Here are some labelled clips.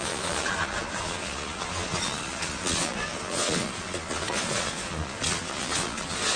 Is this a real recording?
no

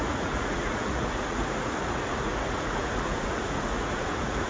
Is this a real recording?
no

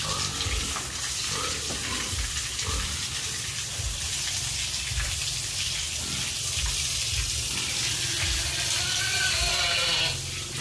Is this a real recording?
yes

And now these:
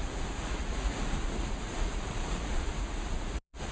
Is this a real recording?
no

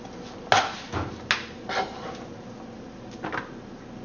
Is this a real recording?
yes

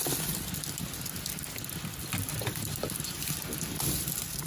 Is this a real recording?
yes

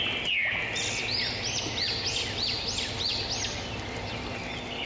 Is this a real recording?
yes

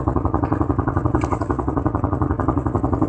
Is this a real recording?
no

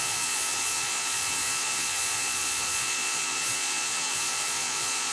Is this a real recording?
no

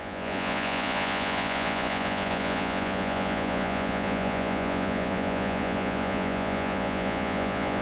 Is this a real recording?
no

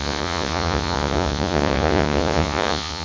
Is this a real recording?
no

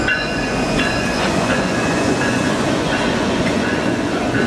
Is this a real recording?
no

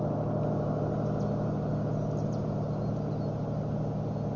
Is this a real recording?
yes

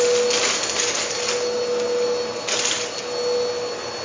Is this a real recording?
yes